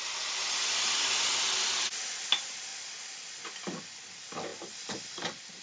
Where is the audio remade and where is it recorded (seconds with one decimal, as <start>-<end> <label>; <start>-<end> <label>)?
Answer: 0.0-5.6 recorded